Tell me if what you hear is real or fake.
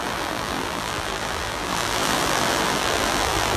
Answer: fake